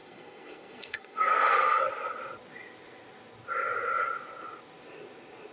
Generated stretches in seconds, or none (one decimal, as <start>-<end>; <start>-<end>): 0.0-1.8